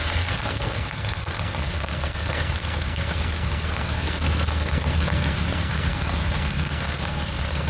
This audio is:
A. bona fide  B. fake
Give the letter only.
B